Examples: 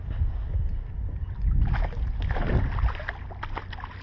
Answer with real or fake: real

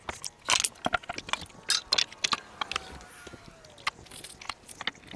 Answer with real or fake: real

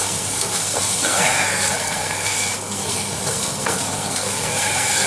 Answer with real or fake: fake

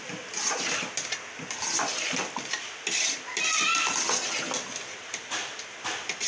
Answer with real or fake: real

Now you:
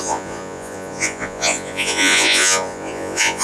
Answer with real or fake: fake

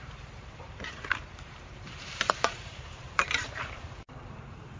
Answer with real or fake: fake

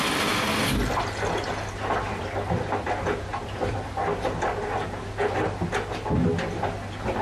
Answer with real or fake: real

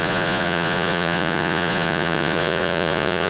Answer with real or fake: fake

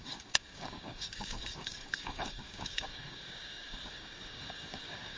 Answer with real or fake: fake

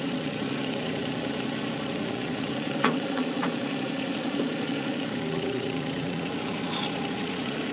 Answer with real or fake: fake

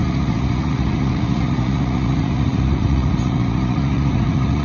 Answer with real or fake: fake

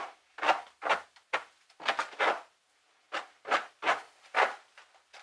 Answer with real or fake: real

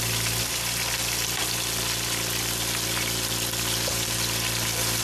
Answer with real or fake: real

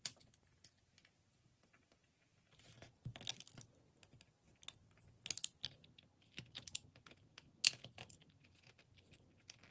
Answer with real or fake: real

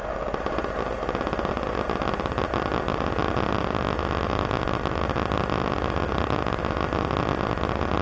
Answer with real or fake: real